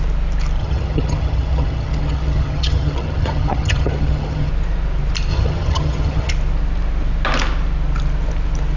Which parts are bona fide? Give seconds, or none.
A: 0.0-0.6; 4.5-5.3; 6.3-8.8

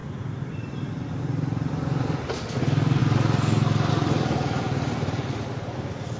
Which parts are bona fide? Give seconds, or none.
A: 0.0-6.2

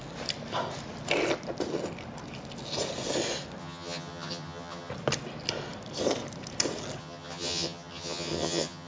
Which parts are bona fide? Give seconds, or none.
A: 0.0-3.6; 4.9-7.0

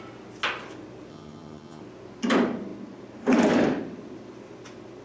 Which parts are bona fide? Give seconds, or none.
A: 0.0-1.1; 1.8-5.0

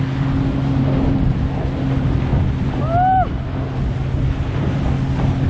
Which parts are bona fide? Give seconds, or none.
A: 0.0-5.5